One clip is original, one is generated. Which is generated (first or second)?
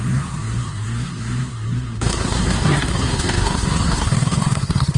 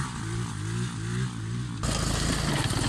first